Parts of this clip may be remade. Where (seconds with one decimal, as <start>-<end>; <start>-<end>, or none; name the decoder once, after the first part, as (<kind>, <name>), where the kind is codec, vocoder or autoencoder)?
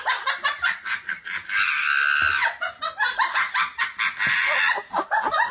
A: none